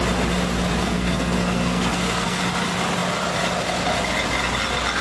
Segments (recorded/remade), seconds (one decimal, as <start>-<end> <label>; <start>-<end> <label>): 0.0-0.8 recorded; 0.8-2.4 remade; 2.4-5.0 recorded